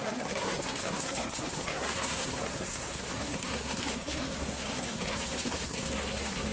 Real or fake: fake